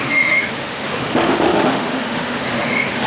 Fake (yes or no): yes